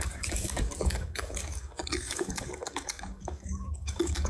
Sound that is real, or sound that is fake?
fake